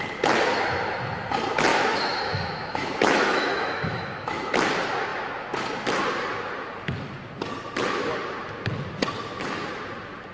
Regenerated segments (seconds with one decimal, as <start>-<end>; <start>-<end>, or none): 1.7-4.5